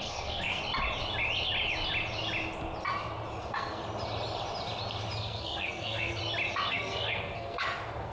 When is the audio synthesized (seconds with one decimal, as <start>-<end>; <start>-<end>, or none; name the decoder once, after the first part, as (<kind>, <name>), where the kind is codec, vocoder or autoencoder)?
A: 0.0-0.6 (codec, SNAC); 3.4-3.8; 5.2-6.2; 6.7-8.1